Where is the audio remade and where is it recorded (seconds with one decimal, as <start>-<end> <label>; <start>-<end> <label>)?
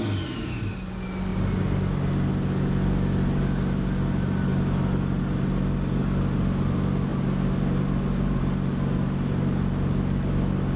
0.0-10.8 recorded